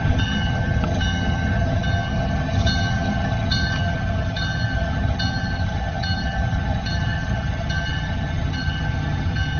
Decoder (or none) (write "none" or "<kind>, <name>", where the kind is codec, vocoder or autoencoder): vocoder, HiFi-GAN